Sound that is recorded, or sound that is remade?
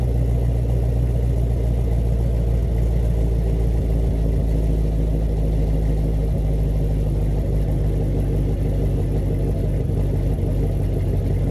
recorded